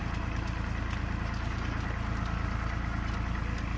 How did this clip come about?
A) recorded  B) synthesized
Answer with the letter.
A